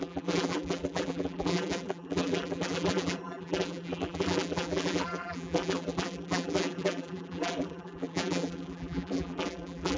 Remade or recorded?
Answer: remade